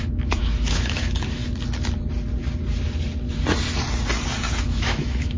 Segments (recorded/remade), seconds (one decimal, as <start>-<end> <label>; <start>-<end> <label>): 0.0-1.4 remade; 1.4-4.6 recorded; 4.6-5.4 remade